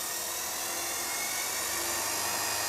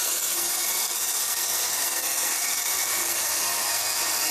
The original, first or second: first